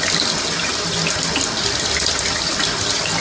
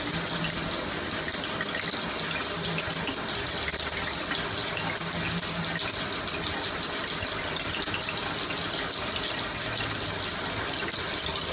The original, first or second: second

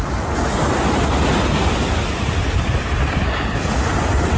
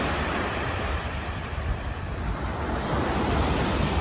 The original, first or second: first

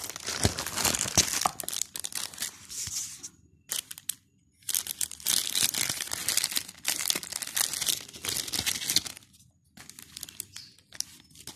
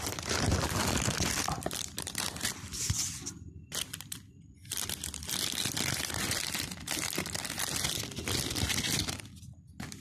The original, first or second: first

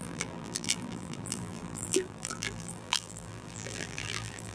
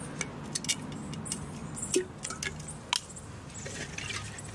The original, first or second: second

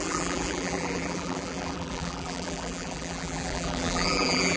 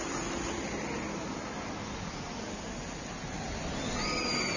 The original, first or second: second